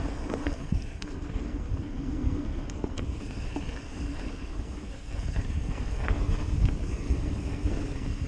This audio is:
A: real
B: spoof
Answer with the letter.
B